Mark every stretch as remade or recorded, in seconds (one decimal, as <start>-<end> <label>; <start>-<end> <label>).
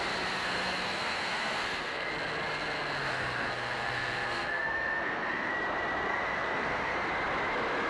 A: 0.0-0.4 recorded; 0.4-2.1 remade; 2.1-3.0 recorded; 3.0-5.5 remade; 5.5-6.1 recorded; 6.1-7.1 remade; 7.1-7.9 recorded